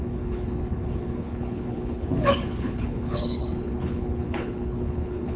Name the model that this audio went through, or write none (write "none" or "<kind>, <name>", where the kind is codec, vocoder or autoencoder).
codec, HILCodec